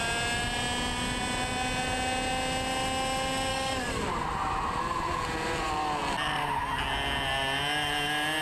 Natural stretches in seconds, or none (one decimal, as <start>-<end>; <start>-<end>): 0.0-3.5; 4.1-8.4

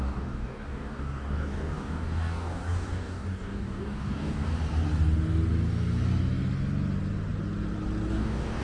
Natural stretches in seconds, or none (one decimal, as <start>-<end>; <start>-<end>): 4.5-8.1